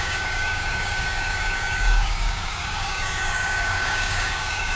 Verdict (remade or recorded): remade